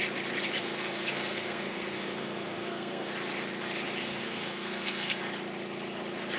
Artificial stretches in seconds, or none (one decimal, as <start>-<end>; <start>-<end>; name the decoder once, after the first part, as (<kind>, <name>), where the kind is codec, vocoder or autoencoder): 0.6-3.1 (codec, SNAC); 4.0-5.2